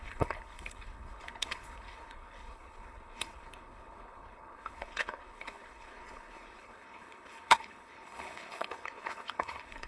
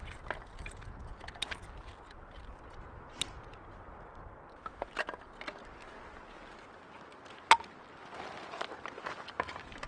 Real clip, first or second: second